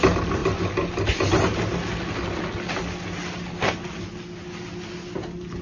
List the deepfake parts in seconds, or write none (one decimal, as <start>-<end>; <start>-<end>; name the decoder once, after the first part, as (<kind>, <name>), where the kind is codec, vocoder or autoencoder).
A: none